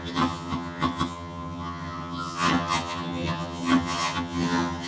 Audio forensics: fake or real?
fake